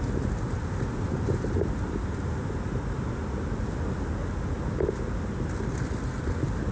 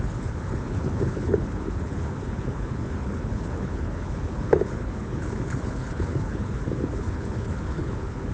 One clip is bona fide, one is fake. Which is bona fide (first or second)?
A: first